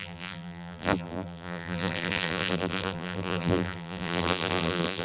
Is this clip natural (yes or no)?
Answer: no